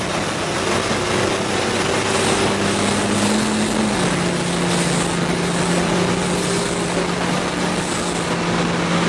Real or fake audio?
real